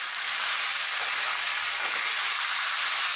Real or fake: real